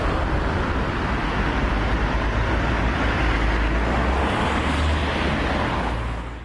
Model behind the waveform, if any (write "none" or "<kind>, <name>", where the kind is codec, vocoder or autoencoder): none